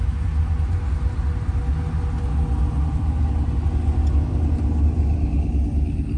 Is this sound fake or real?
real